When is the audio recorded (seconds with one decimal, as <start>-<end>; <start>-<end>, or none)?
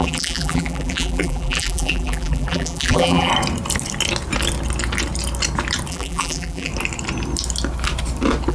3.3-5.9; 6.7-8.5